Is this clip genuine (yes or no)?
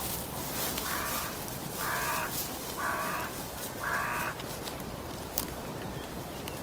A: no